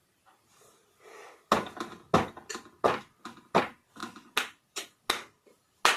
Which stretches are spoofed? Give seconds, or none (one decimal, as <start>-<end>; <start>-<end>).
none